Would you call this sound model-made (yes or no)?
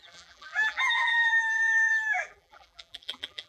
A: yes